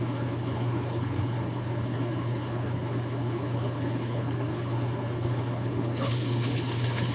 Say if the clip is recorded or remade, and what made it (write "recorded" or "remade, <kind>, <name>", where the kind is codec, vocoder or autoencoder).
remade, codec, HILCodec